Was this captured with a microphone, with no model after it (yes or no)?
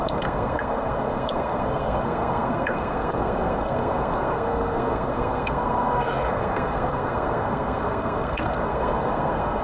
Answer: no